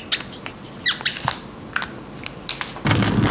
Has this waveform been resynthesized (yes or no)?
no